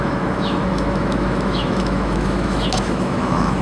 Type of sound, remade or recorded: remade